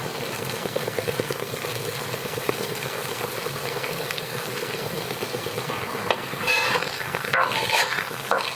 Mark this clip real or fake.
fake